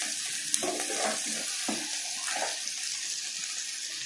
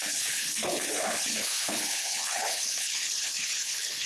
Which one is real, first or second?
first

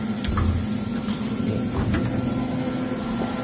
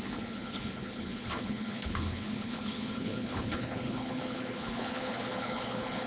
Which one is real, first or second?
first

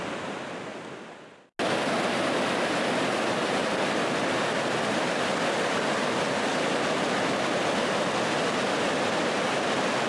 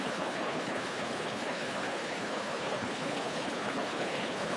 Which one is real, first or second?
first